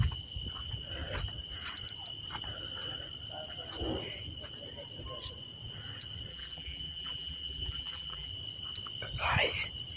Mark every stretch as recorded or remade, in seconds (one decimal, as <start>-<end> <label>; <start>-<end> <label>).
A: 0.0-6.3 recorded; 6.3-8.3 remade; 8.3-10.0 recorded